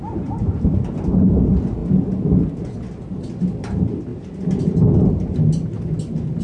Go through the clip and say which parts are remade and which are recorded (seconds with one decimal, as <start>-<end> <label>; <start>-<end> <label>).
0.0-6.4 recorded